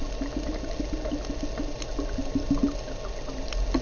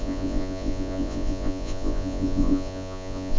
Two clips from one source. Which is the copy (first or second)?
second